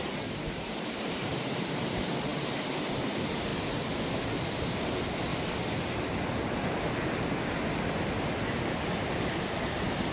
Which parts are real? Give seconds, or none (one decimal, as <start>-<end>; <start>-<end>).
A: 3.5-4.7; 5.3-9.6